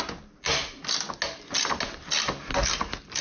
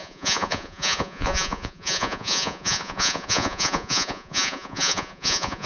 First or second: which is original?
first